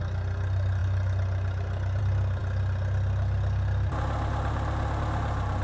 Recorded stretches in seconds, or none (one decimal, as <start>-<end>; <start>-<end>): 0.0-5.6